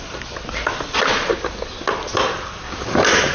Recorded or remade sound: recorded